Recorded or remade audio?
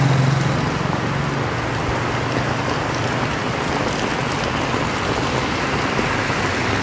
recorded